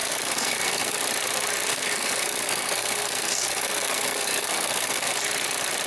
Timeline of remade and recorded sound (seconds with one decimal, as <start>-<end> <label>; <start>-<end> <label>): 0.0-1.0 remade; 1.0-1.7 recorded; 1.7-5.2 remade; 5.2-5.9 recorded